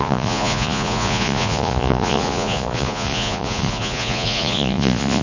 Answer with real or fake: fake